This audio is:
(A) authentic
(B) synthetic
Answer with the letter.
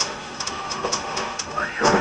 B